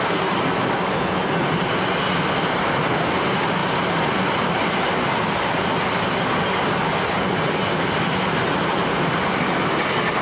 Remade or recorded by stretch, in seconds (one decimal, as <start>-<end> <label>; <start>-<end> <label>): 0.0-10.2 recorded